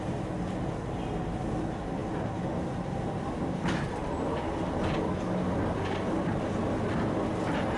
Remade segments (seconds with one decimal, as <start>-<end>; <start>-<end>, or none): none